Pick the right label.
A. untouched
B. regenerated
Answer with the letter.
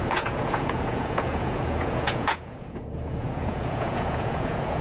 B